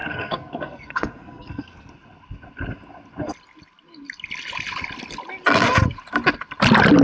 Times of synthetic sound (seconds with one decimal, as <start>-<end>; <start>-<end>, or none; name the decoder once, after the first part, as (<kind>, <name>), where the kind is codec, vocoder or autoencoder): 0.0-1.9 (codec, SNAC)